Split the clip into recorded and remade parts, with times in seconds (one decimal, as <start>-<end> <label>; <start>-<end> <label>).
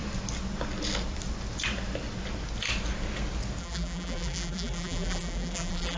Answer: 0.0-3.6 recorded; 3.6-6.0 remade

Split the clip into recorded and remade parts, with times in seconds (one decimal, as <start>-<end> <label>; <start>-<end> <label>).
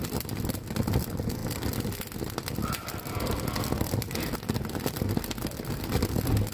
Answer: 0.0-6.5 recorded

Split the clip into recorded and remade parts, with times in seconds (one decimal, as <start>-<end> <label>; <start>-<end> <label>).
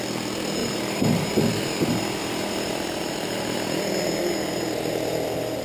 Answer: 0.0-0.6 recorded; 0.6-1.3 remade; 1.3-2.2 recorded; 2.2-3.8 remade; 3.8-5.6 recorded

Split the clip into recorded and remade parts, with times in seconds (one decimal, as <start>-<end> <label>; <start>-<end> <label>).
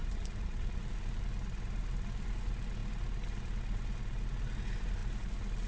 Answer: 0.0-1.2 remade; 1.2-5.7 recorded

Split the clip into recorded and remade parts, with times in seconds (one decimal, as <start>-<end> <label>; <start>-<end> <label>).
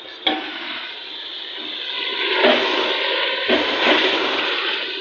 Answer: 0.0-0.5 recorded; 0.5-1.3 remade; 1.3-4.0 recorded; 4.0-4.5 remade; 4.5-5.0 recorded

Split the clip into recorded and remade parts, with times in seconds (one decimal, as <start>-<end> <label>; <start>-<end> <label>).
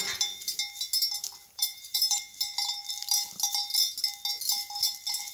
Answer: 0.0-1.4 recorded; 1.4-2.2 remade; 2.2-5.3 recorded